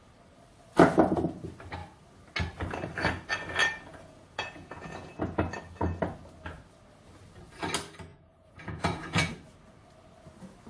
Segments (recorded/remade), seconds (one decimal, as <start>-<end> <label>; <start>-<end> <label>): 0.0-3.9 recorded; 3.9-5.2 remade; 5.2-8.1 recorded; 8.1-9.3 remade; 9.3-10.7 recorded